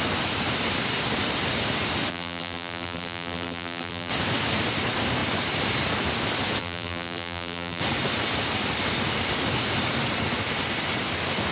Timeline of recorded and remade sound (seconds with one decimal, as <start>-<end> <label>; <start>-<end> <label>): 0.0-2.1 recorded; 2.1-4.1 remade; 4.1-6.6 recorded; 6.6-7.8 remade; 7.8-11.5 recorded